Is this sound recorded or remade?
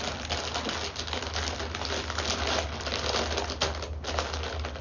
recorded